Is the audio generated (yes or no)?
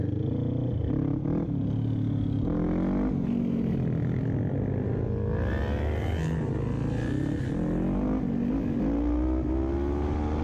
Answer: no